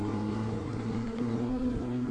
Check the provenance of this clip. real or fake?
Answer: fake